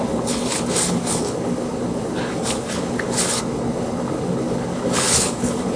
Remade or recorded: remade